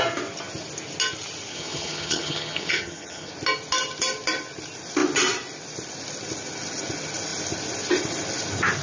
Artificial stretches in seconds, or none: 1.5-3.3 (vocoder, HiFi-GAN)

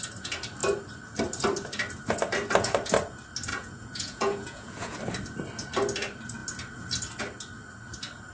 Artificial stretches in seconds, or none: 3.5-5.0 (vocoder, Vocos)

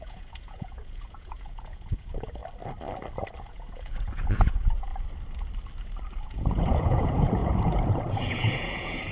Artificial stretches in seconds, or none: 0.0-2.4 (vocoder, Vocos); 3.4-4.9; 6.2-9.1